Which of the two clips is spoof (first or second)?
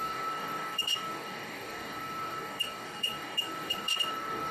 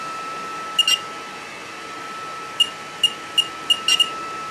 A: first